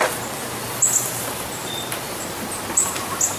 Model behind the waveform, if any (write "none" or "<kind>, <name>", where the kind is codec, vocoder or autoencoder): none